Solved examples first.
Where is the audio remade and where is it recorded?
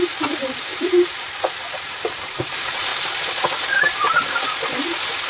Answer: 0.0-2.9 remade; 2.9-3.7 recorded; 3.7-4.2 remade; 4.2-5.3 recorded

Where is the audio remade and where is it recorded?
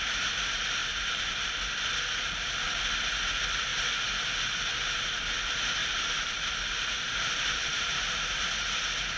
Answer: 0.0-0.8 recorded; 0.8-1.6 remade; 1.6-4.7 recorded; 4.7-5.3 remade; 5.3-5.8 recorded; 5.8-8.4 remade; 8.4-9.2 recorded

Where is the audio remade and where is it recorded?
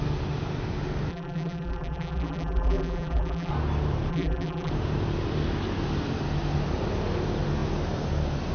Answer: 0.0-1.1 recorded; 1.1-3.5 remade; 3.5-4.1 recorded; 4.1-4.7 remade; 4.7-8.5 recorded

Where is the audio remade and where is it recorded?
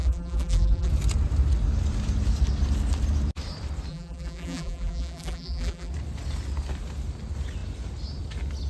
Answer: 0.0-0.9 remade; 0.9-3.9 recorded; 3.9-5.9 remade; 5.9-8.7 recorded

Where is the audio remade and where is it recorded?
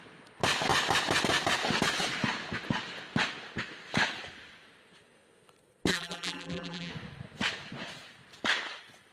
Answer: 0.0-5.9 recorded; 5.9-6.9 remade; 6.9-9.1 recorded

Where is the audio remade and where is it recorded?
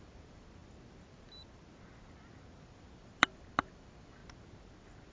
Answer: 0.0-0.6 remade; 0.6-2.6 recorded; 2.6-4.2 remade; 4.2-5.1 recorded